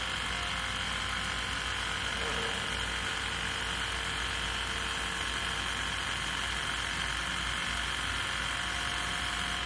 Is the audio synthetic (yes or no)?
no